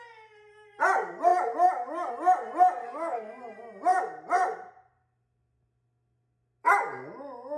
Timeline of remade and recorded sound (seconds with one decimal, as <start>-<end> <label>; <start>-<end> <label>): 0.0-2.8 recorded; 2.8-3.4 remade; 3.4-7.6 recorded